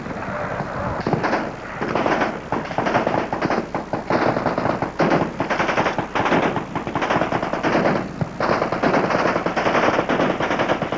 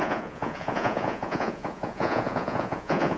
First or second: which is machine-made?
second